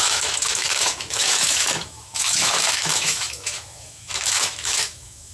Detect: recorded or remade remade